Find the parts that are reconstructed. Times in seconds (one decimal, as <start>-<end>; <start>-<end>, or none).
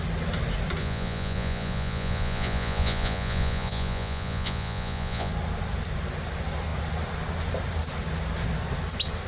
0.8-5.3